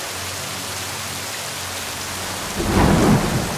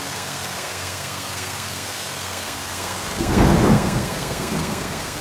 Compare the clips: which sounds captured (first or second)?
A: first